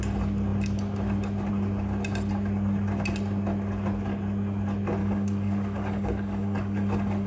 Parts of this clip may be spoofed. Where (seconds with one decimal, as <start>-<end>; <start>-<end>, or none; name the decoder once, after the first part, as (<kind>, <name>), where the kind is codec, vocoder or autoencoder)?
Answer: 5.0-7.3 (codec, DAC)